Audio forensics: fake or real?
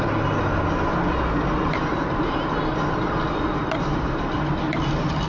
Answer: real